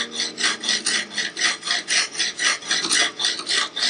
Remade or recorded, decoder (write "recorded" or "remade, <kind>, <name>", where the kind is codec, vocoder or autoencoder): recorded